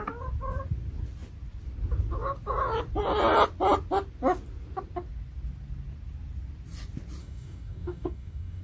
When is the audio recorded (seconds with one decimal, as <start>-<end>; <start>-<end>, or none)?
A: 0.0-7.2